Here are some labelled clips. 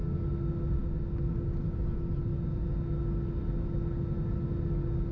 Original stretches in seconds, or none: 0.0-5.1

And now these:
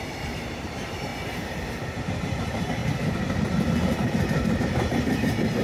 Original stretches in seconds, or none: 1.1-2.0; 2.8-4.6

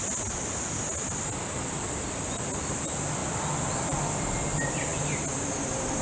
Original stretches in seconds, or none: 0.0-6.0

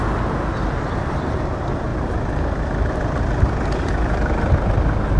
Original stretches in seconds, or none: 0.0-5.2

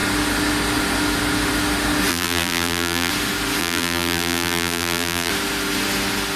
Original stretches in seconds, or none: 0.0-2.1; 3.1-3.6; 5.3-6.4

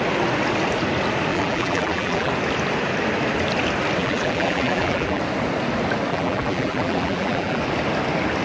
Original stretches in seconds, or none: 0.0-1.3; 2.3-4.0; 5.2-6.1; 7.6-8.4